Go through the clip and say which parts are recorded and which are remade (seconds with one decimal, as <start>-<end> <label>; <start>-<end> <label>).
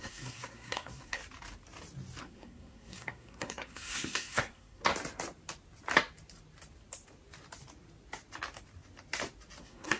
0.0-1.2 remade; 1.2-2.2 recorded; 2.2-4.9 remade; 4.9-9.6 recorded; 9.6-10.0 remade